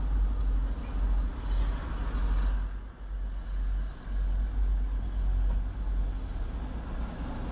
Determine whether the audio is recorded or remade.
recorded